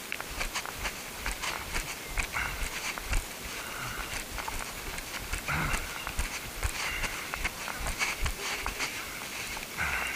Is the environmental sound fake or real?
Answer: fake